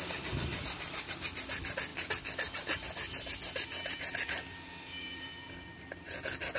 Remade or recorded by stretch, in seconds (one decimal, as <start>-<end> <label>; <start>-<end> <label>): 0.0-6.6 recorded